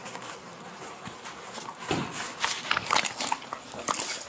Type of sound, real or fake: real